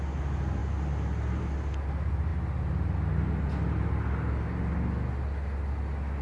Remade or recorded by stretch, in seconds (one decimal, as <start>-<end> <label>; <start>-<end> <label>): 0.0-6.2 recorded